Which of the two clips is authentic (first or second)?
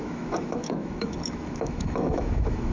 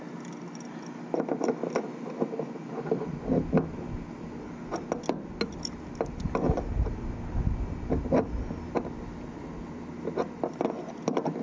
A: second